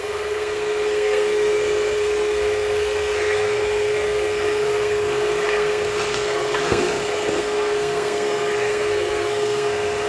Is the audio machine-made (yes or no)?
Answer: yes